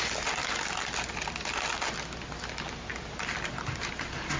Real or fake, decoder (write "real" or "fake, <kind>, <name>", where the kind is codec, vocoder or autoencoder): real